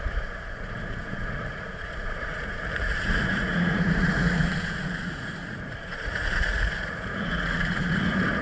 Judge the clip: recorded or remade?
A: remade